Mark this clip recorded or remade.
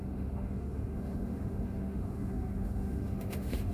remade